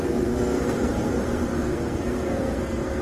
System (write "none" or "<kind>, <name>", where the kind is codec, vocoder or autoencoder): codec, SNAC